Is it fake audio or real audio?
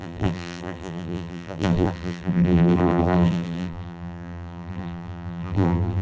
fake